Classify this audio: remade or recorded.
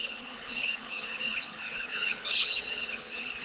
remade